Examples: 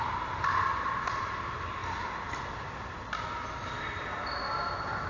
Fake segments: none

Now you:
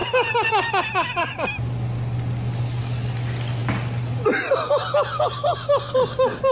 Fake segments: none